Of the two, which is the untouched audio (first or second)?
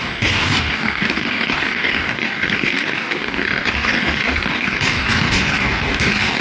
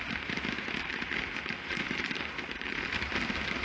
second